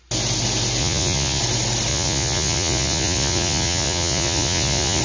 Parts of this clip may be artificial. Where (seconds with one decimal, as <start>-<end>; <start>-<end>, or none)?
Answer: 0.8-1.4; 1.9-5.0